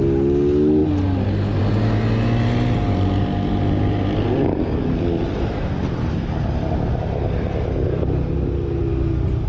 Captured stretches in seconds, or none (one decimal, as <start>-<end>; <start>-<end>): 0.0-9.5